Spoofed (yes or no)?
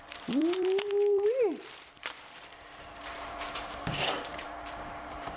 yes